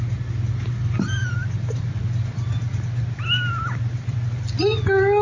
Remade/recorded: recorded